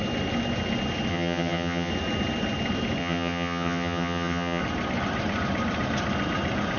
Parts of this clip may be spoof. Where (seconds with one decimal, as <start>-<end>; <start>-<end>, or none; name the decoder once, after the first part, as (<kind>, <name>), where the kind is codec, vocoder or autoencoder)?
1.1-1.9 (vocoder, HiFi-GAN); 3.0-4.6